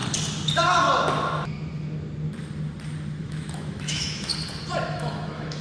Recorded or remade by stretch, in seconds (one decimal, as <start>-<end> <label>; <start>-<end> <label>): 0.0-3.2 recorded; 3.2-4.3 remade; 4.3-4.9 recorded; 4.9-5.6 remade